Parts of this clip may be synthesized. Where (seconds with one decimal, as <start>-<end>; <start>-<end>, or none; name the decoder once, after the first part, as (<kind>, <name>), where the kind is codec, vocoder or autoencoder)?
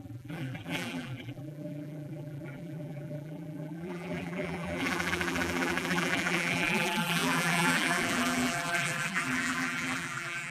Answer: 0.0-10.5 (vocoder, BigVGAN v2)